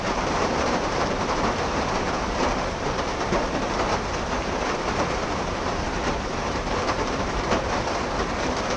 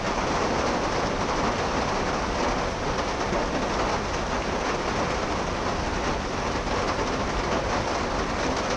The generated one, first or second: first